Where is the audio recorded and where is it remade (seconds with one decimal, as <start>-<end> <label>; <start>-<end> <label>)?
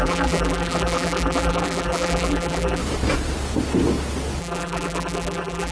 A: 0.0-2.8 remade; 2.8-4.4 recorded; 4.4-5.7 remade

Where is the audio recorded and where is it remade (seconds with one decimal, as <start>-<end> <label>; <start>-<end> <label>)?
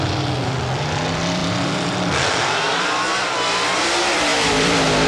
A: 0.0-5.1 remade